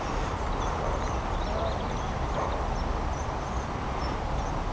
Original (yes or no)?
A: yes